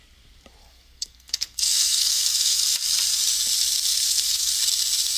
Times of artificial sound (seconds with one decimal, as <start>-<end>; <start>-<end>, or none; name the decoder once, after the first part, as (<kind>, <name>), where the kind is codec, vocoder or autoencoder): 0.6-2.6 (codec, SNAC); 3.9-4.5